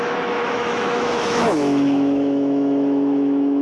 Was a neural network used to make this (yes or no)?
yes